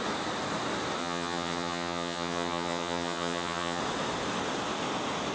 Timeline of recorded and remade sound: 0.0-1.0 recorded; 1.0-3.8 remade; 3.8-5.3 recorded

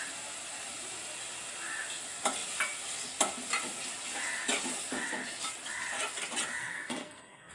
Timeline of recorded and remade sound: 0.0-6.6 recorded; 6.6-7.5 remade

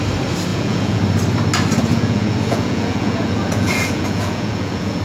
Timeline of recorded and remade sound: 0.0-0.5 recorded; 0.5-1.0 remade; 1.0-1.9 recorded; 1.9-5.0 remade

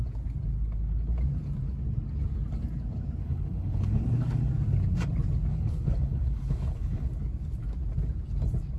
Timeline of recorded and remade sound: 0.0-3.2 recorded; 3.2-4.5 remade; 4.5-5.5 recorded; 5.5-7.1 remade; 7.1-8.8 recorded